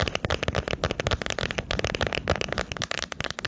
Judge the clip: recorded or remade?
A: recorded